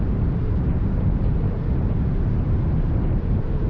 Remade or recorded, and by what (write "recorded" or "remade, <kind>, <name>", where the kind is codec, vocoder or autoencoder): remade, vocoder, BigVGAN v2